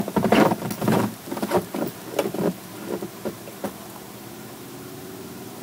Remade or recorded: recorded